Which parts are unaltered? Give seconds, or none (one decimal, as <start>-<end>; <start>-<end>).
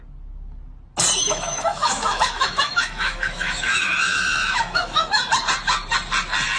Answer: 0.0-1.2; 5.2-6.6